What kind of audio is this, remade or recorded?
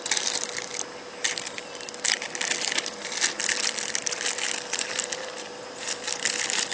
recorded